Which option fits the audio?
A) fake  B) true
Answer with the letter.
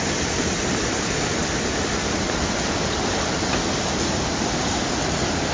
B